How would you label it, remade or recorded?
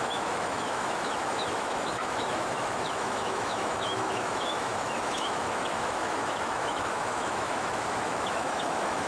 remade